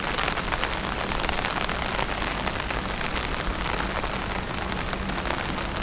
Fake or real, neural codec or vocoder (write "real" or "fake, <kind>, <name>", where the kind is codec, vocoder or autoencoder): real